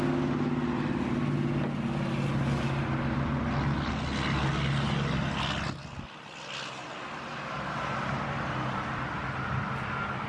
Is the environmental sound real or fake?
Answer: real